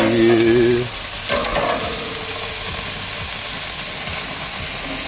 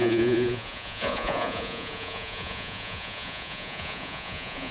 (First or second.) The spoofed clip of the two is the second